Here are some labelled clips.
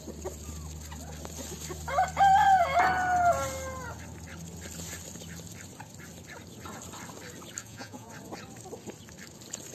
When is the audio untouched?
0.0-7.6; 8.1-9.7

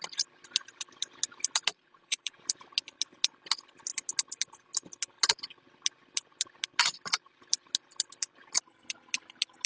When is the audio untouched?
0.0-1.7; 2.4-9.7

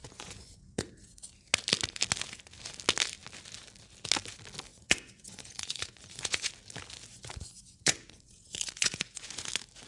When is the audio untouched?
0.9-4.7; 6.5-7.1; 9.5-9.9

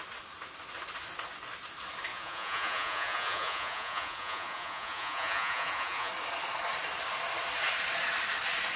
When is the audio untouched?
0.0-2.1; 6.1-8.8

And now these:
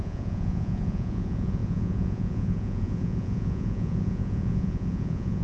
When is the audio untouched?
none

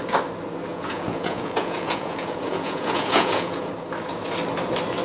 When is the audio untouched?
0.0-0.7; 3.7-5.0

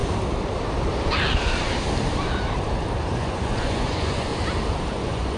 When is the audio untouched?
0.0-3.1; 4.3-4.9

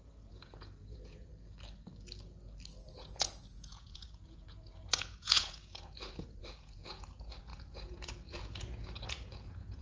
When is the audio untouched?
1.3-2.9